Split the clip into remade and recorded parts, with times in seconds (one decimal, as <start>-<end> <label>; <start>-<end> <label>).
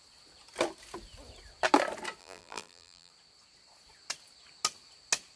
0.0-2.2 recorded; 2.2-3.1 remade; 3.1-5.4 recorded